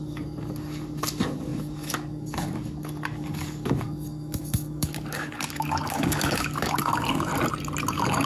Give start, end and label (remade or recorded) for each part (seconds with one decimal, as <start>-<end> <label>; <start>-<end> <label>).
0.0-7.3 remade; 7.3-7.9 recorded; 7.9-8.3 remade